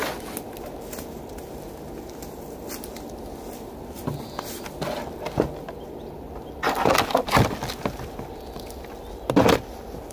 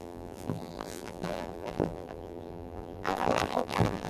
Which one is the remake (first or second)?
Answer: second